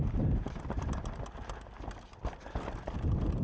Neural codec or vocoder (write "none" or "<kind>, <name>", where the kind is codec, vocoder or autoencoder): none